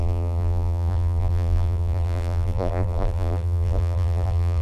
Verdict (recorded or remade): remade